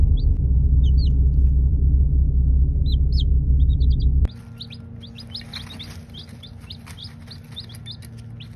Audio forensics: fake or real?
real